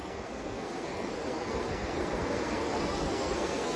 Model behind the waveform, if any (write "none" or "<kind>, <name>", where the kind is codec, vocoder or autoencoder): codec, SNAC